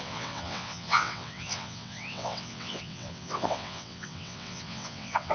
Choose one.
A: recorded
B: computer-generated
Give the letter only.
B